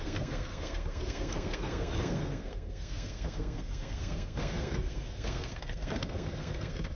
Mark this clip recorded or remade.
remade